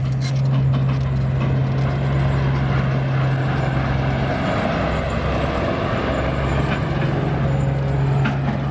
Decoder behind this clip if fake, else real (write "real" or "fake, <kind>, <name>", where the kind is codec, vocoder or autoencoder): real